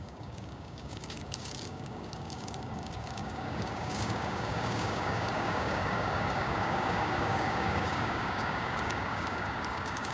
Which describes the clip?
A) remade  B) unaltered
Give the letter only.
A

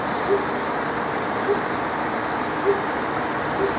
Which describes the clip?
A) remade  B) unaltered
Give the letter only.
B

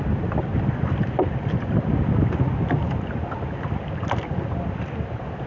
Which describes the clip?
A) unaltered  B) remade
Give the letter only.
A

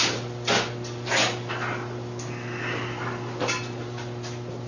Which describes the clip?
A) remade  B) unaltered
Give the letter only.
B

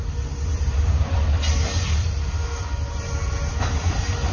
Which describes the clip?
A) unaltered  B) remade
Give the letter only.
A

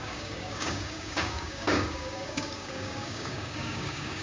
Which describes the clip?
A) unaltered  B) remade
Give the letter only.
B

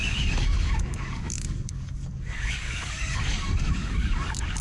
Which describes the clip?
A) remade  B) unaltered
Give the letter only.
A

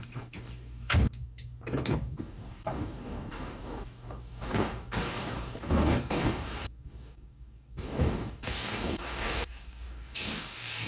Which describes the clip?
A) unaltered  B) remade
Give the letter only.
B